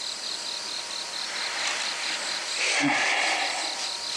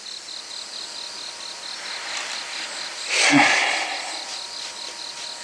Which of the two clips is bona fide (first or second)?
second